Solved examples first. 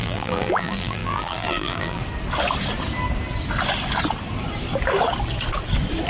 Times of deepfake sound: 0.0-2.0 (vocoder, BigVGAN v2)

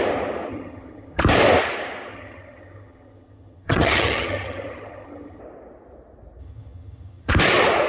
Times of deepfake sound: 0.5-1.2 (vocoder, HiFi-GAN); 2.1-5.4; 6.4-7.3

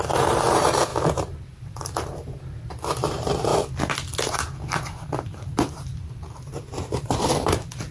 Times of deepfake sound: 0.0-3.5 (vocoder, BigVGAN v2); 5.1-7.9